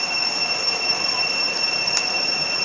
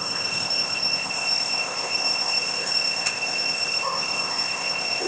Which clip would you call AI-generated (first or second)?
second